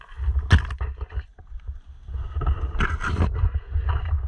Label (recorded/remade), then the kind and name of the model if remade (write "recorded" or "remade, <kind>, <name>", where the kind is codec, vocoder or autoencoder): recorded